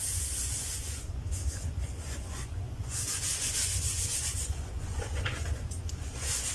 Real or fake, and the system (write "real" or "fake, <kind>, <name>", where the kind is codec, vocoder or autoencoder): fake, vocoder, Vocos